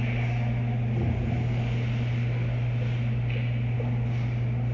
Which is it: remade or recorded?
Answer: recorded